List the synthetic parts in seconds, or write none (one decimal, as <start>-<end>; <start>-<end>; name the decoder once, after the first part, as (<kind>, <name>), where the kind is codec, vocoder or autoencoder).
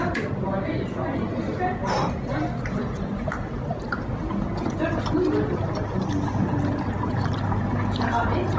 3.7-4.7 (vocoder, BigVGAN v2)